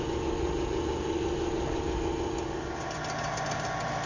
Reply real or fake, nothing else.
real